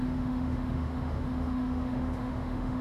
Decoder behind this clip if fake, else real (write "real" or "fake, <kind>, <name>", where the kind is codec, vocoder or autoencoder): fake, autoencoder, DAC-VAE